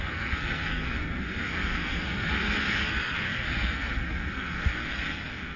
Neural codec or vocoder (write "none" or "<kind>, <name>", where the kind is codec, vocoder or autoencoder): codec, SNAC